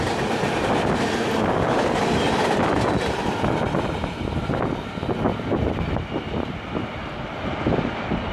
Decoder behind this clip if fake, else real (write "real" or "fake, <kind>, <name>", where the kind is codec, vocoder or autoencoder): real